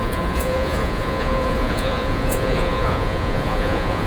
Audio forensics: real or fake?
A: fake